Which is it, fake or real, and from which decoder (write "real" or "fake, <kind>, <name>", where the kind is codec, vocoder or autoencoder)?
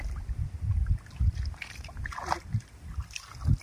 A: real